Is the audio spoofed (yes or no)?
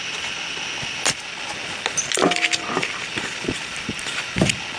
no